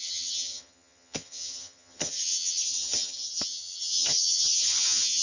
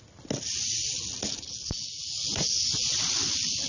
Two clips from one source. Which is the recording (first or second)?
second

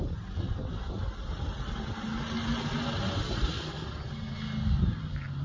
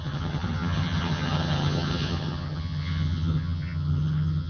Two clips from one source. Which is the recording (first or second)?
first